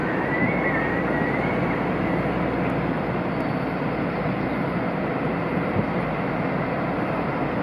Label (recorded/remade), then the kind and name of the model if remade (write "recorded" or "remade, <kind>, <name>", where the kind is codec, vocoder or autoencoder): recorded